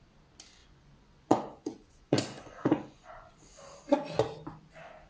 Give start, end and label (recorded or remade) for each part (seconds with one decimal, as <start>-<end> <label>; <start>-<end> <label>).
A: 0.0-0.6 recorded; 0.6-3.3 remade; 3.3-5.1 recorded